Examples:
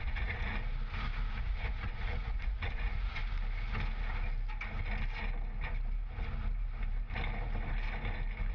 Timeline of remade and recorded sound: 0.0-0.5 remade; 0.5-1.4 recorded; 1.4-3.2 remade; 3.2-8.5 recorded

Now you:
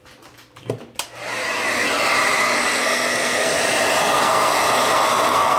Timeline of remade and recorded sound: 0.0-2.4 recorded; 2.4-3.5 remade; 3.5-4.0 recorded; 4.0-5.6 remade

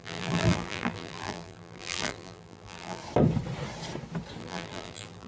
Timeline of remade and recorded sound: 0.0-3.0 remade; 3.0-4.4 recorded; 4.4-5.3 remade

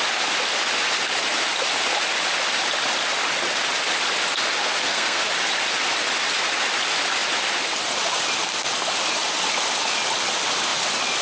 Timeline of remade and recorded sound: 0.0-4.6 recorded; 4.6-5.2 remade; 5.2-11.2 recorded

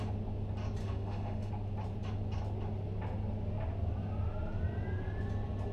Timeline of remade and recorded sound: 0.0-0.8 recorded; 0.8-1.5 remade; 1.5-5.7 recorded

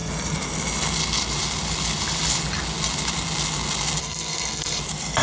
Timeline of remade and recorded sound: 0.0-4.0 recorded; 4.0-4.8 remade; 4.8-5.2 recorded

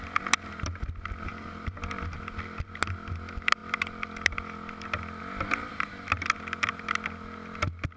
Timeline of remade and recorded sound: 0.0-8.0 recorded

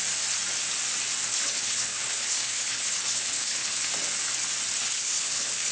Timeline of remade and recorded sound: 0.0-1.3 recorded; 1.3-3.8 remade; 3.8-4.8 recorded; 4.8-5.7 remade